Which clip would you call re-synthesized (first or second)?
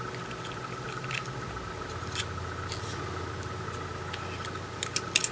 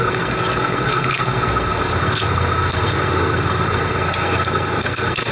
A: second